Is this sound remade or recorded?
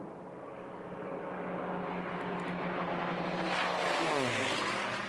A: recorded